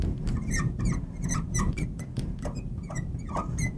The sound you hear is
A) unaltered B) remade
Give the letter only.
B